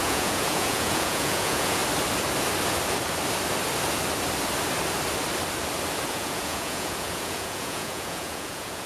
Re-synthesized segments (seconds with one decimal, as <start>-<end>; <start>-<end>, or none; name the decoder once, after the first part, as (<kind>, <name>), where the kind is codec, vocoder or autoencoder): 0.0-1.8 (vocoder, Vocos); 6.1-8.9